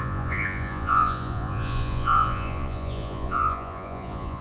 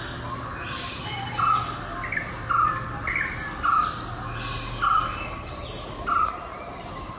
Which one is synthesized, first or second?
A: first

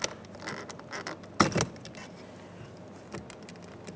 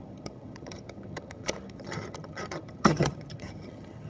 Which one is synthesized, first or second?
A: second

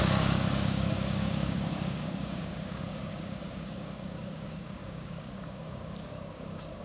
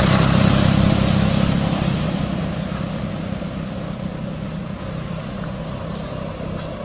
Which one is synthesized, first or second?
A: first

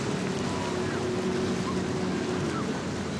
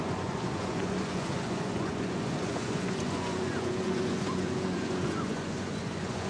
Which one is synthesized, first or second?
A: second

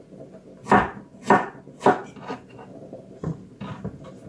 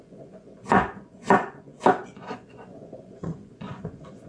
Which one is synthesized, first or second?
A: second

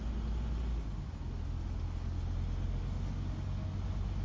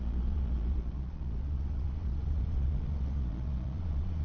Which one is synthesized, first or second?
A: second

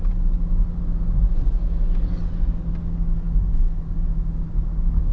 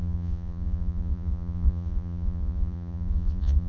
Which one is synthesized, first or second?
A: second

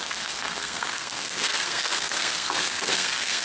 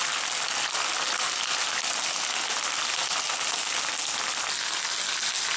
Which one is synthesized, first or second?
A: first